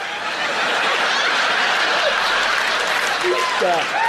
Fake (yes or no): no